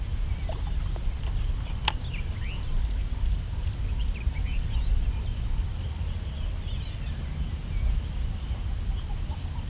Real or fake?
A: real